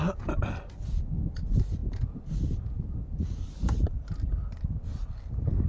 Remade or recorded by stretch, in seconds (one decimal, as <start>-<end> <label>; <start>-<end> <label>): 0.0-5.7 recorded